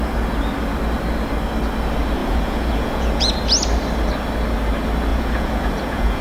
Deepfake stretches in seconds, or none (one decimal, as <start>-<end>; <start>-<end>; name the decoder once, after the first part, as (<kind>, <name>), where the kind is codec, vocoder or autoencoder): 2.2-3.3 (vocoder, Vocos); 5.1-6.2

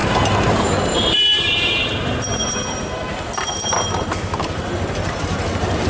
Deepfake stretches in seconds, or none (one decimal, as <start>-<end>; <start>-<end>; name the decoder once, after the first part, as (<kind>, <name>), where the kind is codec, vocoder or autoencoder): 0.0-3.5 (vocoder, BigVGAN v2)

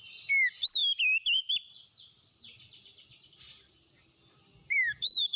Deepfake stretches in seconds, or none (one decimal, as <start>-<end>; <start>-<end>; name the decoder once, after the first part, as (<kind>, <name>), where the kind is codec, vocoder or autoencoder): 0.8-4.0 (vocoder, BigVGAN v2); 4.6-5.4

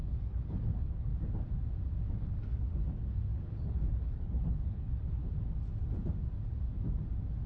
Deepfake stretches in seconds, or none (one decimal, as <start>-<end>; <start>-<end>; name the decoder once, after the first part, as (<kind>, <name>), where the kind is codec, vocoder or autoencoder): 0.0-1.1 (codec, HILCodec); 2.2-5.2

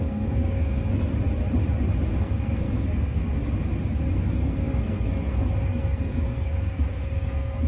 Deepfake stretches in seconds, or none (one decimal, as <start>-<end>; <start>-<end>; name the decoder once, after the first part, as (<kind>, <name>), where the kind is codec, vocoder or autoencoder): 0.0-1.1 (codec, SNAC); 2.2-3.2; 4.1-7.7

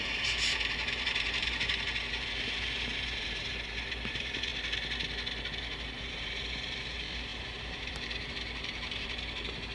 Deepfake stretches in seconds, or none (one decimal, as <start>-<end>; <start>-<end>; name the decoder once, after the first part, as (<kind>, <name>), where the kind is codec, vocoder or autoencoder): 0.0-4.5 (vocoder, BigVGAN v2); 6.0-9.7